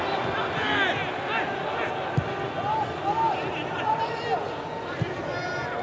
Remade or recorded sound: recorded